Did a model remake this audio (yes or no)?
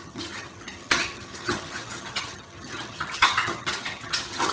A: yes